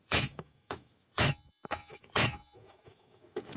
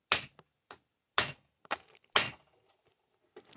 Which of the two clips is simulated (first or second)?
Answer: first